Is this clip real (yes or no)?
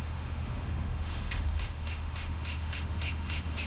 no